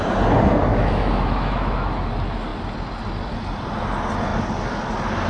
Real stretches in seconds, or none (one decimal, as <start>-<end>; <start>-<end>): 0.0-0.7; 2.1-5.3